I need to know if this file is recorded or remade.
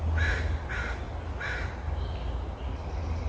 recorded